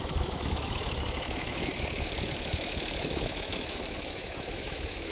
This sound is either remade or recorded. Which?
remade